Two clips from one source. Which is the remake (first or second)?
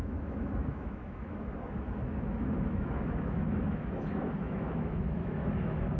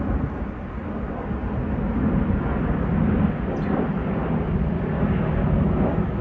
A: first